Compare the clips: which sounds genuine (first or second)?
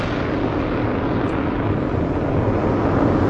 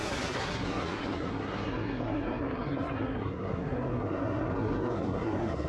first